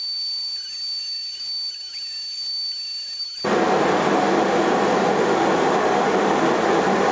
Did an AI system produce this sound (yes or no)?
no